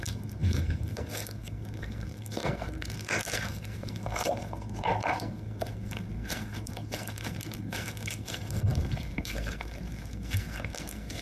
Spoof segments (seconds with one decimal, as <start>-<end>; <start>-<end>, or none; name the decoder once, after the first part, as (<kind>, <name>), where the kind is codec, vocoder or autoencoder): 0.0-11.2 (codec, SNAC)